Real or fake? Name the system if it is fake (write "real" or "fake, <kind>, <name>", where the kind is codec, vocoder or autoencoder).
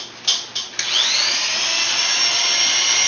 real